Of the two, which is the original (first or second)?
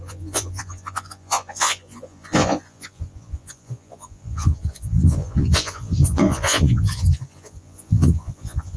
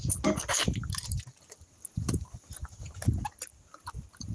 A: second